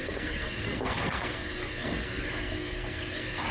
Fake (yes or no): yes